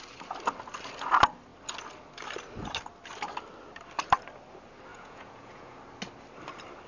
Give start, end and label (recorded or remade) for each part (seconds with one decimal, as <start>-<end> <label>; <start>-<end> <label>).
0.0-4.9 recorded; 4.9-5.8 remade; 5.8-6.9 recorded